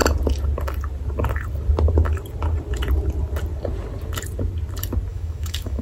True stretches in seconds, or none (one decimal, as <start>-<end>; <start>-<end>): 0.0-5.1